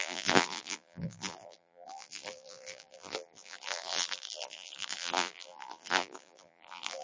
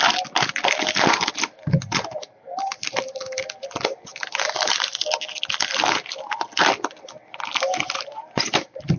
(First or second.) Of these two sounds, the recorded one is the second